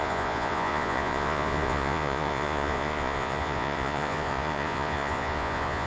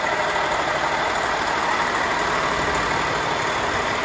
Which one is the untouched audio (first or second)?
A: second